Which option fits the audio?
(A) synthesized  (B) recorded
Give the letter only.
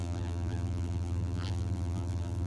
A